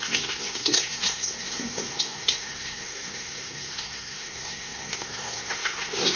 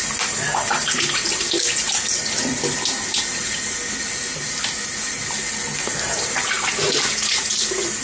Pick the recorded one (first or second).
second